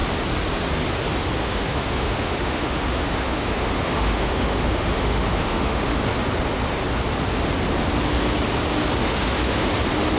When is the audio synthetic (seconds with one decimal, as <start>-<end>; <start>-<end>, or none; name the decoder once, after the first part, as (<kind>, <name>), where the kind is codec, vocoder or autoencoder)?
1.4-6.0 (autoencoder, DAC-VAE); 9.0-9.7